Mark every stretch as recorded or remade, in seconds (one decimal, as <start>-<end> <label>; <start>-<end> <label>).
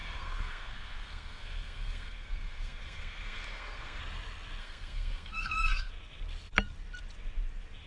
0.0-4.0 remade; 4.0-4.6 recorded; 4.6-5.9 remade; 5.9-7.9 recorded